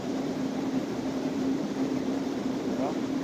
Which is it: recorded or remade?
remade